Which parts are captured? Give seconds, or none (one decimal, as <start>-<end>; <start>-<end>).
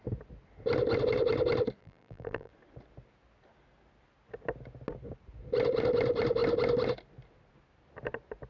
0.0-1.8; 2.5-8.5